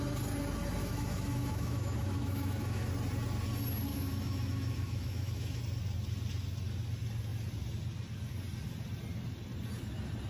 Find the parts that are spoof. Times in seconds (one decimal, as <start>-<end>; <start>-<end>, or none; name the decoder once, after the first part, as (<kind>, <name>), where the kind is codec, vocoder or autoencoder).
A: 0.8-2.9 (autoencoder, DAC-VAE); 3.9-5.6